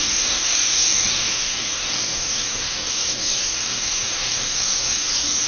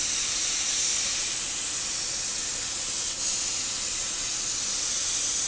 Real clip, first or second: second